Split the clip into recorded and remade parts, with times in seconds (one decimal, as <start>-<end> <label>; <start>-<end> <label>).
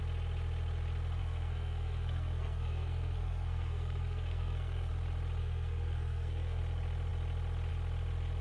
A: 0.0-1.2 recorded; 1.2-4.9 remade; 4.9-5.4 recorded; 5.4-6.6 remade; 6.6-8.4 recorded